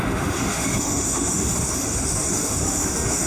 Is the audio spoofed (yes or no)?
yes